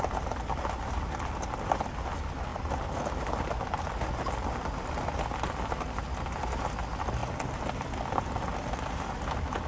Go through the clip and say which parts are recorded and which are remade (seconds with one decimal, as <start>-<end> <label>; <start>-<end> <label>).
0.0-9.7 recorded